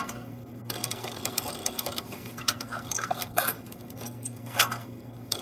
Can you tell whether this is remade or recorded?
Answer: remade